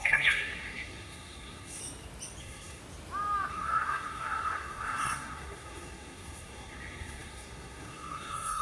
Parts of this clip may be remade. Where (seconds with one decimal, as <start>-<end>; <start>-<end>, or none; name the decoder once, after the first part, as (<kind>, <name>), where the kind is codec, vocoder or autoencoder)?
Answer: 0.0-1.8 (codec, SNAC); 2.4-2.8; 3.5-8.6